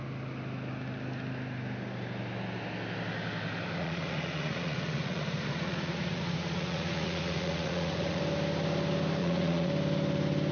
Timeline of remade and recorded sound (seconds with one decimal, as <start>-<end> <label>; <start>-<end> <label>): 0.0-3.8 recorded; 3.8-8.2 remade; 8.2-9.2 recorded; 9.2-9.7 remade; 9.7-10.5 recorded